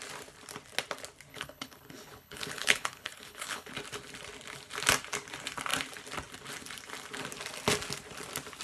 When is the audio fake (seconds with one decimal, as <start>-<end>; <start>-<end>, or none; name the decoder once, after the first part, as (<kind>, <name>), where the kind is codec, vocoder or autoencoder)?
1.3-3.7 (codec, HILCodec)